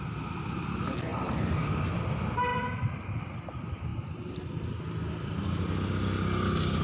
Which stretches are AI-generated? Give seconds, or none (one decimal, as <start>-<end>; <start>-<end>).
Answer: none